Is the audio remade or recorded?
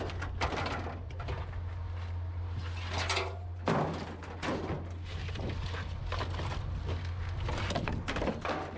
recorded